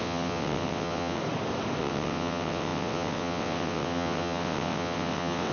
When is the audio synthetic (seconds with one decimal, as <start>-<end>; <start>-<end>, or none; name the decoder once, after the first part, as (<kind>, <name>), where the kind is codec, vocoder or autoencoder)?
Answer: 0.0-1.2 (vocoder, WaveNeXt); 1.8-5.5